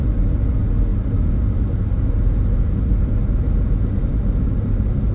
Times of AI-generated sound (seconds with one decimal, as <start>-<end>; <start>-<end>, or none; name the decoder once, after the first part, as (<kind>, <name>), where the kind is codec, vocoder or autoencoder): none